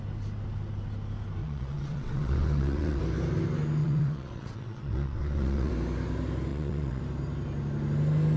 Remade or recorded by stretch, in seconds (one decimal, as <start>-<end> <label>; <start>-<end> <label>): 0.0-1.4 recorded; 1.4-3.0 remade; 3.0-3.8 recorded; 3.8-5.7 remade; 5.7-6.5 recorded; 6.5-7.0 remade; 7.0-8.4 recorded